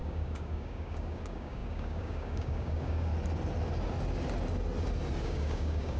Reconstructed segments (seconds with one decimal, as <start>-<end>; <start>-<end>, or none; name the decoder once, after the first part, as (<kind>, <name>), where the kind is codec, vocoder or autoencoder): 0.0-3.1 (codec, DAC); 5.2-6.0